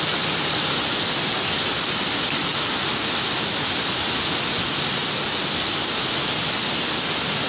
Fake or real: real